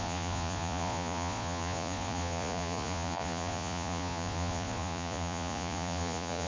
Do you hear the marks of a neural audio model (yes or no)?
yes